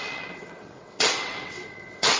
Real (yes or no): no